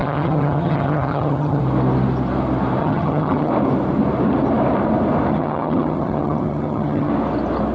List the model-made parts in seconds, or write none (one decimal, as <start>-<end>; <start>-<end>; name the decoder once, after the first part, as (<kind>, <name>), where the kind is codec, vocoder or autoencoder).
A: 0.0-1.6 (vocoder, HiFi-GAN); 2.8-3.5; 5.3-7.1